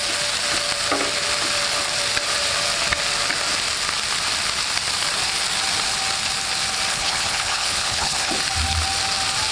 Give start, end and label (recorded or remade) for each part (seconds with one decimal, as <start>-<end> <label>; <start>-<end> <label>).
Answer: 0.0-6.9 recorded; 6.9-8.3 remade; 8.3-9.5 recorded